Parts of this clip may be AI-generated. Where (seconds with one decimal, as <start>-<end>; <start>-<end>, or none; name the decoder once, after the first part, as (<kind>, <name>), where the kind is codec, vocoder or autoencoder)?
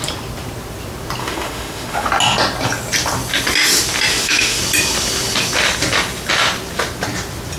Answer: 1.2-2.1 (autoencoder, DAC-VAE); 4.1-4.6